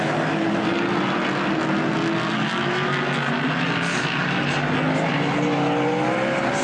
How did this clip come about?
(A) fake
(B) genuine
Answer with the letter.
B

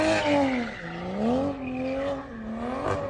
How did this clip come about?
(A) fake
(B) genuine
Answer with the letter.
B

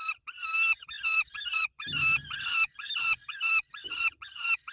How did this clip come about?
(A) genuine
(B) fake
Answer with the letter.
B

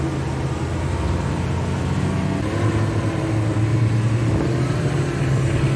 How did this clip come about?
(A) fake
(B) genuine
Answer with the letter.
B